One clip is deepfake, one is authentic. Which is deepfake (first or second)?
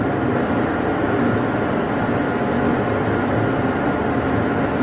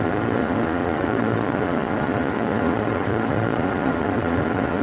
second